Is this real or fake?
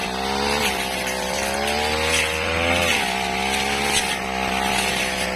real